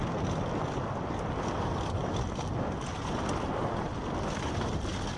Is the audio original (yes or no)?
yes